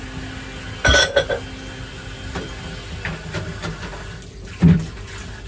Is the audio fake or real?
real